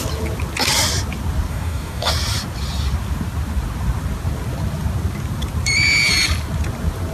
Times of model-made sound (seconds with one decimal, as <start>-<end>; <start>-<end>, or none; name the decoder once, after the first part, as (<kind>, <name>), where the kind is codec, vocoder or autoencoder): 1.5-2.1 (codec, DAC)